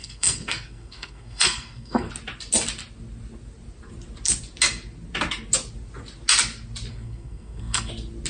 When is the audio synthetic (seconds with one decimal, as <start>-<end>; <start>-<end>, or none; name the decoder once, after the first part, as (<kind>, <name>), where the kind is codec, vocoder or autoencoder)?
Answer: 0.0-2.1 (codec, SNAC); 6.9-7.9